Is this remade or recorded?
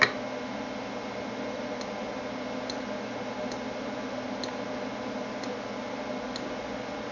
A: recorded